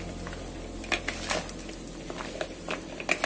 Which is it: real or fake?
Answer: real